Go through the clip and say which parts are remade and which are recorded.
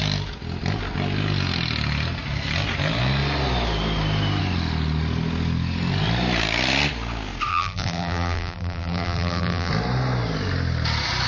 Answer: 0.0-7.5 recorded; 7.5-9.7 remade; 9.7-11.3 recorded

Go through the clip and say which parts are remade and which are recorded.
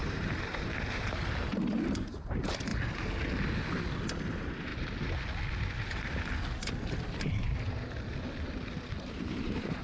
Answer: 0.0-2.7 remade; 2.7-4.2 recorded; 4.2-4.7 remade; 4.7-9.0 recorded; 9.0-9.8 remade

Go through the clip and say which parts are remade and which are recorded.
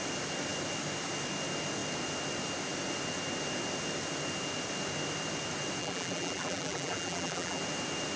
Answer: 0.0-5.8 recorded; 5.8-7.6 remade; 7.6-8.2 recorded